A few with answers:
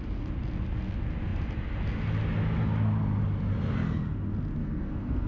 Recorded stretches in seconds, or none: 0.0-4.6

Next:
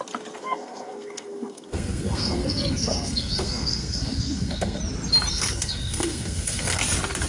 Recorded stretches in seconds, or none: 0.0-0.4; 4.8-5.3; 6.8-7.3

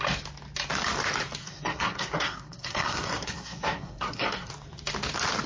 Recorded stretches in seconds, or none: 0.0-1.4; 4.5-5.5

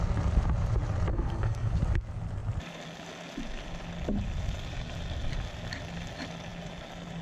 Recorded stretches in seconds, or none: 0.0-1.1; 1.8-7.2

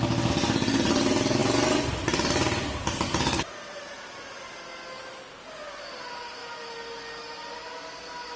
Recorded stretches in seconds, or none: 0.0-8.4

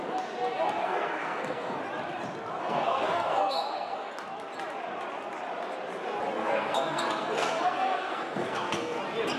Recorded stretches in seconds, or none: 0.0-0.8; 1.8-2.6; 4.1-6.4; 9.0-9.4